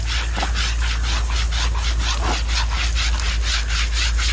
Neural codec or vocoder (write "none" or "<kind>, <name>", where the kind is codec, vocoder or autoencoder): none